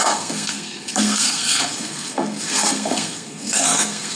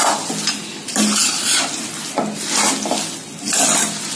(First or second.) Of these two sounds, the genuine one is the second